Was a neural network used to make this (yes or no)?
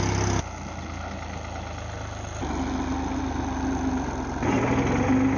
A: no